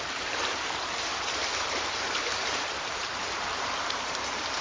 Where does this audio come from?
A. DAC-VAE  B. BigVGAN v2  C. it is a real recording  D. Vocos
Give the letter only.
B